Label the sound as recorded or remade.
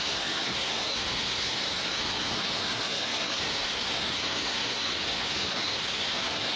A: remade